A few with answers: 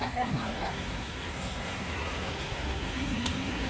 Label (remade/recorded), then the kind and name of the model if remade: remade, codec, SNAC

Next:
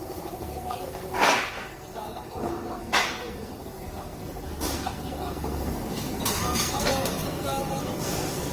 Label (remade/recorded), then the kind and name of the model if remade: remade, codec, SNAC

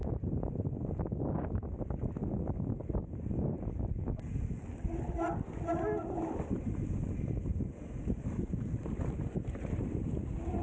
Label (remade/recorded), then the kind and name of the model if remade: recorded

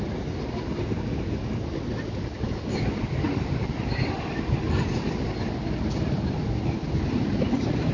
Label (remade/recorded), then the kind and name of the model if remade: recorded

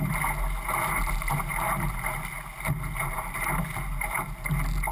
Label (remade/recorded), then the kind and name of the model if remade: recorded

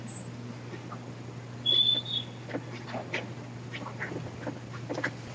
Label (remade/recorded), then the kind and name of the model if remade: recorded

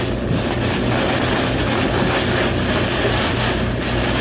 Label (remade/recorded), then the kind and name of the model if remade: recorded